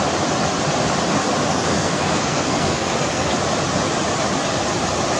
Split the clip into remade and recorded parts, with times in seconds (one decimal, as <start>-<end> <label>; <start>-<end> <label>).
0.0-1.5 recorded; 1.5-3.3 remade; 3.3-5.2 recorded